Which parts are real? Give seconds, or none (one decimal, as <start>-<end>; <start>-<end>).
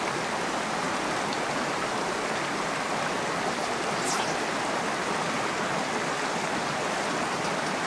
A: 0.0-7.9